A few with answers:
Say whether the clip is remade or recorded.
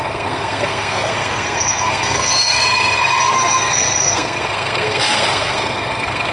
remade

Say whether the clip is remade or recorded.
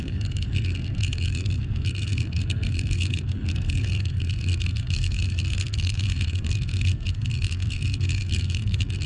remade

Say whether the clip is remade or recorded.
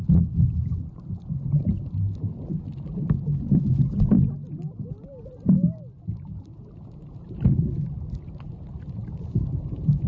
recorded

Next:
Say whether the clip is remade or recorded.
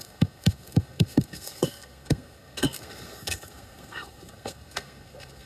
remade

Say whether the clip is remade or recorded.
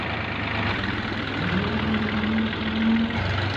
recorded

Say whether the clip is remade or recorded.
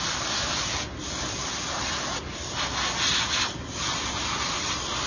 recorded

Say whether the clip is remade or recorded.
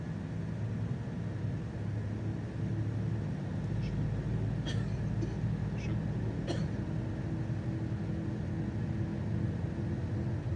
recorded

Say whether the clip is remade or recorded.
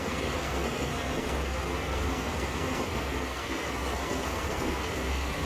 remade